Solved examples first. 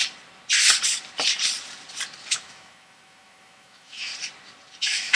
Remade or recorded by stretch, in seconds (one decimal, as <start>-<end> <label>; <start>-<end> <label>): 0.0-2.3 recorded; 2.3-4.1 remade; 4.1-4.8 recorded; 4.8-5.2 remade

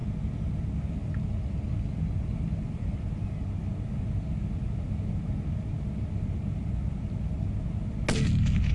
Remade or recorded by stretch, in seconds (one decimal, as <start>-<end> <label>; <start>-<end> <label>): 0.0-8.7 recorded

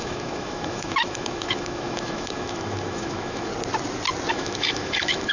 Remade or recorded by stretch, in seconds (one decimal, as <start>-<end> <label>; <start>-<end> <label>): 0.0-3.5 remade; 3.5-4.3 recorded; 4.3-5.3 remade

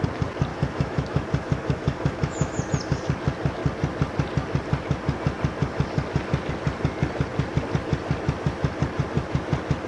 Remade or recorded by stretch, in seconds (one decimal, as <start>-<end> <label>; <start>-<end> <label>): 0.0-0.5 recorded; 0.5-2.6 remade; 2.6-9.9 recorded

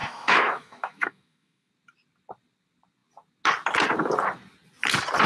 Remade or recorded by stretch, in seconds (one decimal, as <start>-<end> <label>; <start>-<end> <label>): 0.0-1.7 remade; 1.7-5.3 recorded